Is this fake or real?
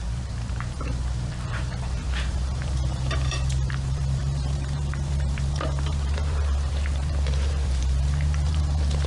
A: fake